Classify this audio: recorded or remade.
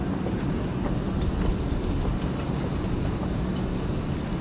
recorded